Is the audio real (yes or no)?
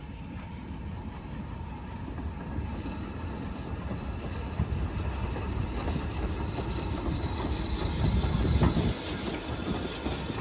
yes